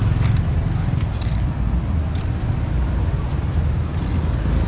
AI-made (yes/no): no